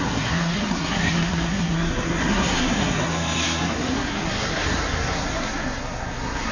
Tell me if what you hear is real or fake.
fake